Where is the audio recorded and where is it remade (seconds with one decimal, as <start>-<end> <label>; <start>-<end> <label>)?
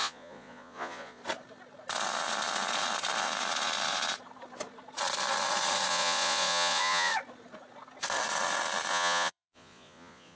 0.0-1.2 remade; 1.2-5.9 recorded; 5.9-7.1 remade; 7.1-8.9 recorded; 8.9-10.4 remade